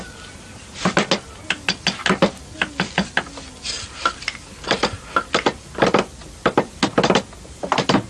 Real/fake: real